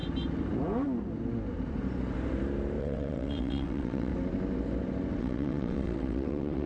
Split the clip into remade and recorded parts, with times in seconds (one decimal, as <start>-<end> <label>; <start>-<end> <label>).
0.0-2.8 recorded; 2.8-4.1 remade; 4.1-5.2 recorded; 5.2-6.7 remade